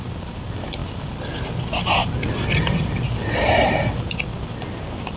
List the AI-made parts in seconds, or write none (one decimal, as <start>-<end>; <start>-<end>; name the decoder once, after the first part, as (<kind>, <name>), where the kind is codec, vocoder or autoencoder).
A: none